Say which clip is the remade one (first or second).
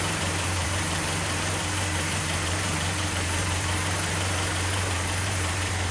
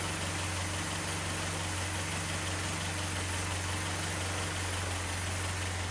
first